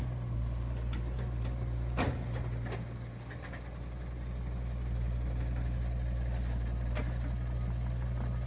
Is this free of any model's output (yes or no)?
yes